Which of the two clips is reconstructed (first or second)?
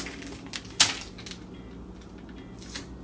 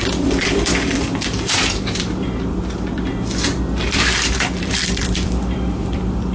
second